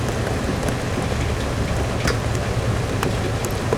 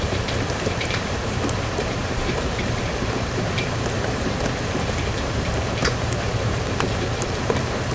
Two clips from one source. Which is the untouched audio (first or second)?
first